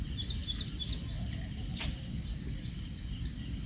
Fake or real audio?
real